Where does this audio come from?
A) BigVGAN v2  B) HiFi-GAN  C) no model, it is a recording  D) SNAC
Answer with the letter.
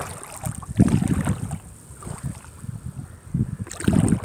C